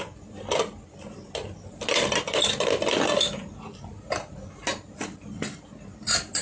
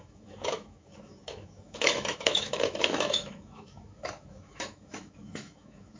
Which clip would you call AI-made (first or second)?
second